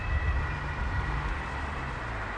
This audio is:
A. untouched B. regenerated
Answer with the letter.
A